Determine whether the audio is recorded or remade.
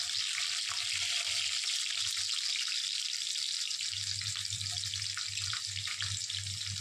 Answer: recorded